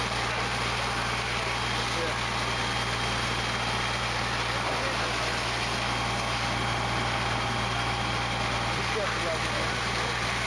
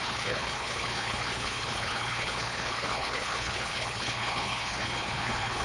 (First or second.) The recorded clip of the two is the first